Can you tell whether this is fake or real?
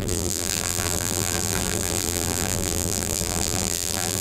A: fake